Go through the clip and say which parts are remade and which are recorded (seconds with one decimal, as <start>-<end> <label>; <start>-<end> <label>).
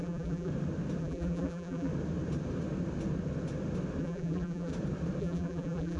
0.0-0.5 remade; 0.5-1.0 recorded; 1.0-1.9 remade; 1.9-4.0 recorded; 4.0-4.7 remade; 4.7-5.2 recorded; 5.2-6.0 remade